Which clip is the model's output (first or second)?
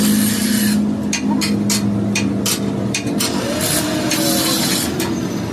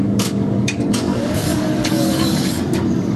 second